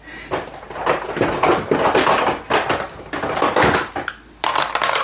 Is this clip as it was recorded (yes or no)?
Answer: yes